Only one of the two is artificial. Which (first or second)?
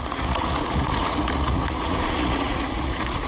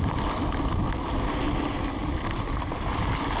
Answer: first